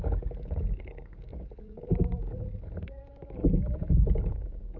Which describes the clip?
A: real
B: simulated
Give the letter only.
B